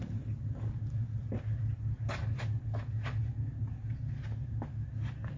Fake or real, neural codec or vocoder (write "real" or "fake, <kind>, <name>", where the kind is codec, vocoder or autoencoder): real